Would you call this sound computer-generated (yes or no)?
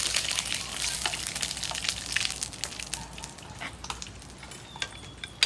no